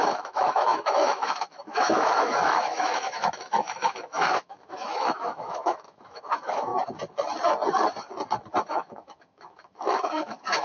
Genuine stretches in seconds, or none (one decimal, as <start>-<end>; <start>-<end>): 6.7-8.7